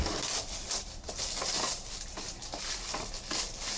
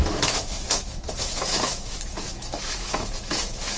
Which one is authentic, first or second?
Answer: first